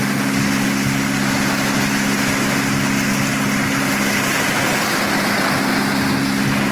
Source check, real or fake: real